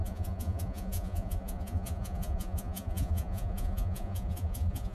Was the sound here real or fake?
fake